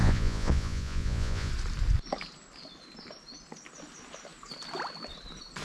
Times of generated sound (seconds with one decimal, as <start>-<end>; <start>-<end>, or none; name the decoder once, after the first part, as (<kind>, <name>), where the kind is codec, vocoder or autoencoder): 0.0-1.5 (vocoder, Vocos)